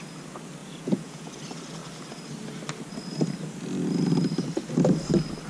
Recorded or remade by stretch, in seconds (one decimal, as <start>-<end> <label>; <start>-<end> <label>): 0.0-0.6 recorded; 0.6-1.3 remade; 1.3-5.5 recorded